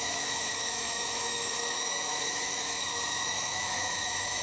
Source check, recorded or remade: remade